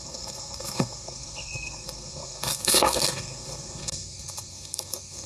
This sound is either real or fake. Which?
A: fake